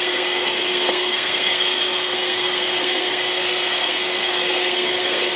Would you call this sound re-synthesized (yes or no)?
yes